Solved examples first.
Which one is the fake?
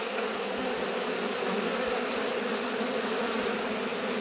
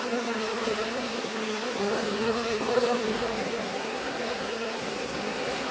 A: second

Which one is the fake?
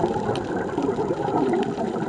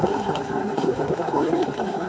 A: second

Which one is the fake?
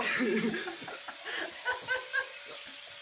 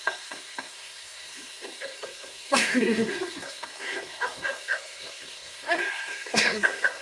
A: second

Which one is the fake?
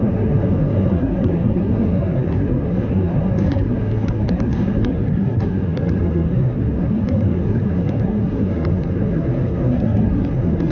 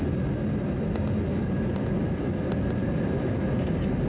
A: first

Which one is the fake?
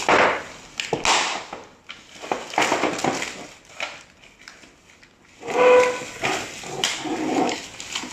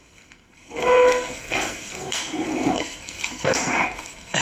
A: second